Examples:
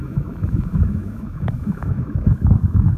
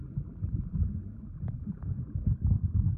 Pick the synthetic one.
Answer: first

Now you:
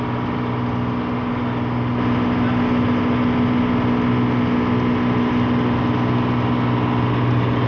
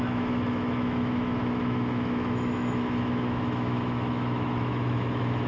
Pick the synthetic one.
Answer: second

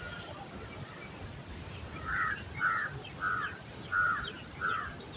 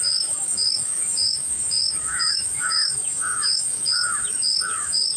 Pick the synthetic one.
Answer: second